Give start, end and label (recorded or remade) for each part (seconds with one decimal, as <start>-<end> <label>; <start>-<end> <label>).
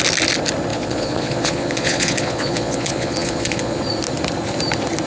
0.0-0.7 recorded; 0.7-3.8 remade; 3.8-5.1 recorded